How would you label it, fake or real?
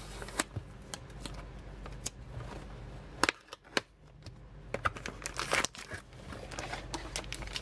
real